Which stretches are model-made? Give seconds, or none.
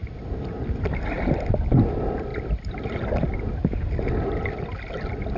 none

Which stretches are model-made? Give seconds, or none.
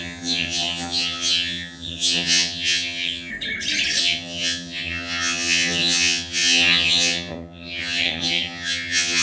0.0-3.3; 4.0-9.2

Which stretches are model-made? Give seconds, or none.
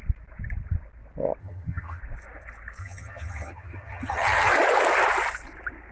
1.4-2.0; 2.8-4.5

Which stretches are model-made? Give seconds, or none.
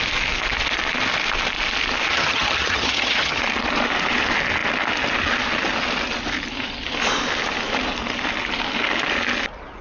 2.1-3.4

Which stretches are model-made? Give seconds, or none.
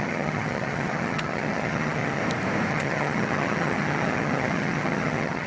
0.0-2.2; 2.7-5.5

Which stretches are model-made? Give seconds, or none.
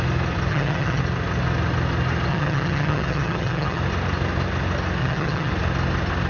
0.5-1.0; 2.3-3.8; 5.0-5.5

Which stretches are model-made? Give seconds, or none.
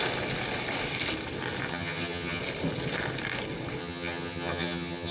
1.7-2.4; 3.8-5.1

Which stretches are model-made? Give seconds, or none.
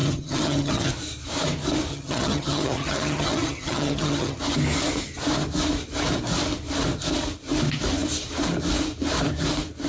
0.0-0.9; 1.9-4.4